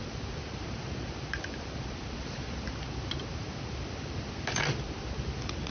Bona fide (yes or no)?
yes